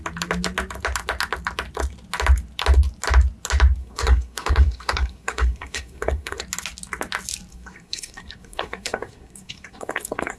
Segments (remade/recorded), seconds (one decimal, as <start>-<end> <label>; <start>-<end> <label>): 0.0-3.8 recorded; 3.8-6.4 remade; 6.4-7.5 recorded; 7.5-10.4 remade